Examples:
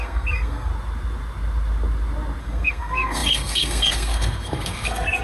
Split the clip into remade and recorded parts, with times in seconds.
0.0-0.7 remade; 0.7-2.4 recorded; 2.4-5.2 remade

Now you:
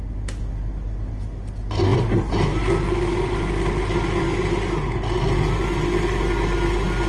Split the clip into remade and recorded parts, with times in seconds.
0.0-7.1 recorded

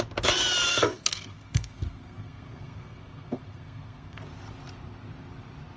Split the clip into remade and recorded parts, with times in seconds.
0.0-0.7 recorded; 0.7-4.2 remade; 4.2-5.8 recorded

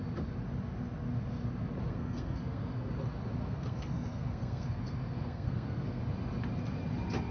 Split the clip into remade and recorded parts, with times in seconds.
0.0-1.9 recorded; 1.9-2.9 remade; 2.9-3.4 recorded; 3.4-6.0 remade; 6.0-7.3 recorded

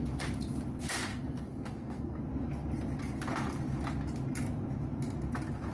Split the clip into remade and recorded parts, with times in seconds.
0.0-1.1 recorded; 1.1-2.2 remade; 2.2-5.7 recorded

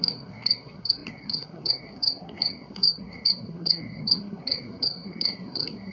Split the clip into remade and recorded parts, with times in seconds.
0.0-5.9 remade

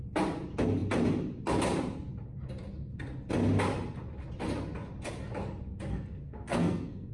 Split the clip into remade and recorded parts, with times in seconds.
0.0-5.9 recorded; 5.9-7.1 remade